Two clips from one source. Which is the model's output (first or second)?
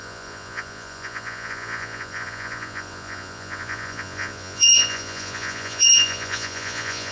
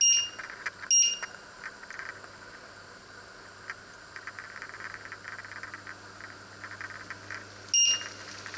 first